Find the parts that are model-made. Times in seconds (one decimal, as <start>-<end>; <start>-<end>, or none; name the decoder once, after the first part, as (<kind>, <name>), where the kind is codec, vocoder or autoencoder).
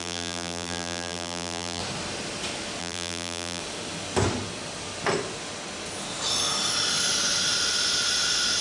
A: 0.0-1.8 (vocoder, BigVGAN v2); 2.8-3.6